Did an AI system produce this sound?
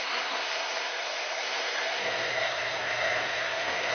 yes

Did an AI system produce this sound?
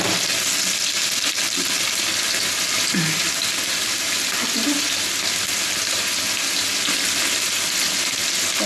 no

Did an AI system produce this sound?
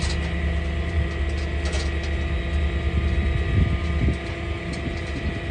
no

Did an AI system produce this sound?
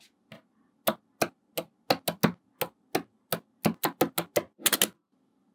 no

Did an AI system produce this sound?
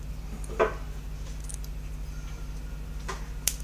no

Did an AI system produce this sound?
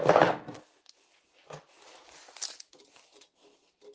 no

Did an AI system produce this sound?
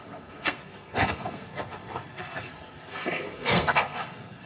yes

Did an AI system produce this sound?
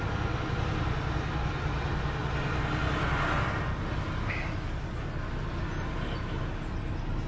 no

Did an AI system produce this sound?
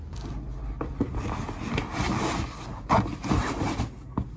no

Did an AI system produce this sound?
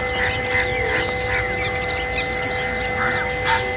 no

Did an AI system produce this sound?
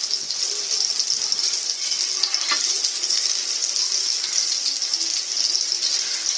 no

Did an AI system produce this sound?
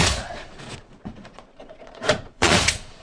yes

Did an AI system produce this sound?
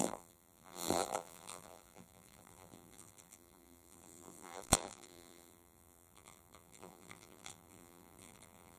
yes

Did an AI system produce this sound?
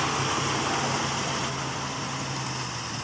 no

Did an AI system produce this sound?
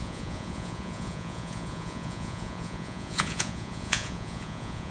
yes